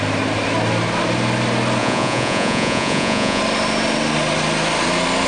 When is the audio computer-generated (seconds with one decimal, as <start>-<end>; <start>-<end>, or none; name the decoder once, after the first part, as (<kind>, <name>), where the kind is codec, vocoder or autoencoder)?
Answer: 1.8-3.4 (vocoder, Vocos)